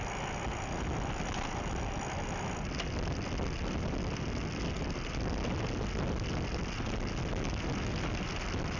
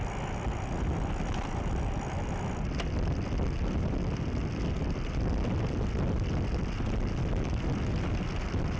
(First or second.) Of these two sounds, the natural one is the first